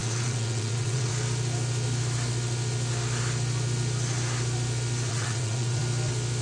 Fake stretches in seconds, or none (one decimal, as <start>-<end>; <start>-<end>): 0.0-1.1; 5.1-5.8